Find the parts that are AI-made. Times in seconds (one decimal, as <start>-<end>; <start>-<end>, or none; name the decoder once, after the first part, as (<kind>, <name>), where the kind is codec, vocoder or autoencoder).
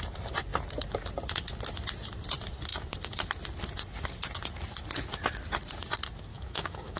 6.3-7.0 (autoencoder, DAC-VAE)